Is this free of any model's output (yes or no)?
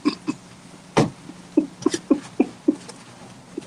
yes